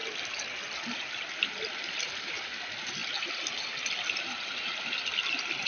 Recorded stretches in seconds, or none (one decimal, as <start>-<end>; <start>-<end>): 0.0-5.7